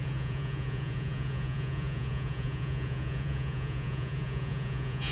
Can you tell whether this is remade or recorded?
remade